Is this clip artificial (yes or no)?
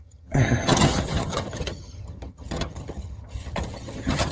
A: yes